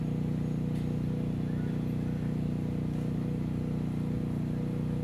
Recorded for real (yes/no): yes